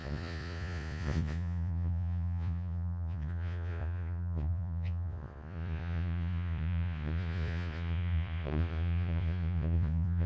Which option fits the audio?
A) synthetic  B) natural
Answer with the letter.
A